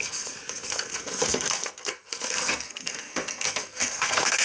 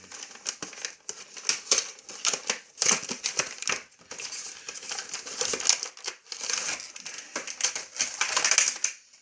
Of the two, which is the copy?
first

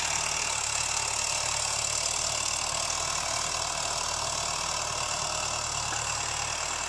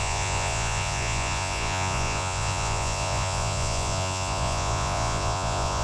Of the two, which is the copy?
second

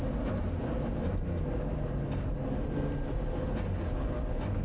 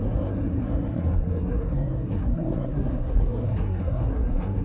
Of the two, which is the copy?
second